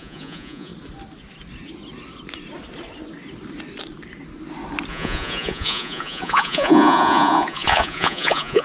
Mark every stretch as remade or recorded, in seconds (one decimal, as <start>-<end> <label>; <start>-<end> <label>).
0.0-0.7 remade; 0.7-4.9 recorded; 4.9-8.6 remade